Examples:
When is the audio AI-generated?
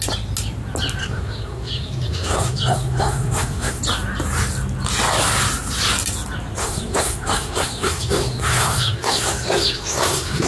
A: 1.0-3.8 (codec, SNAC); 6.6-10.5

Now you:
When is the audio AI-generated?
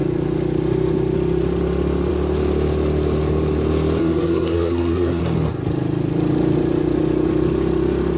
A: 4.0-5.2 (codec, SNAC)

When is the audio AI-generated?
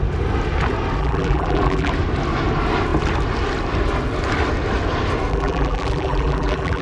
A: 1.0-1.9 (vocoder, BigVGAN v2); 5.3-6.8